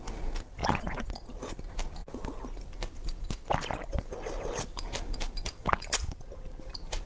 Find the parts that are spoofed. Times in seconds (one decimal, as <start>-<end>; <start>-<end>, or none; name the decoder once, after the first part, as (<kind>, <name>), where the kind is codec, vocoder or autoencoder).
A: 0.6-1.1 (vocoder, Vocos)